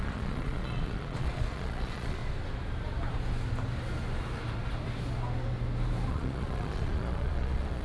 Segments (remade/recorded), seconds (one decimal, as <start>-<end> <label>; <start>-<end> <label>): 0.0-2.2 remade; 2.2-6.1 recorded; 6.1-7.8 remade